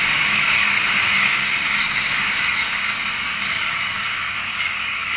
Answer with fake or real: fake